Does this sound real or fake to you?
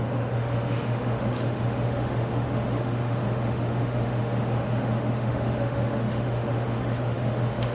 fake